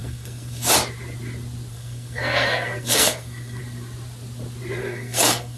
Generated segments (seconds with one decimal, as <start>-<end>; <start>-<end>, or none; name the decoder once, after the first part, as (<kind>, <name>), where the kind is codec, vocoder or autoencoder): 0.0-0.7 (codec, SNAC); 1.7-3.6; 4.8-5.6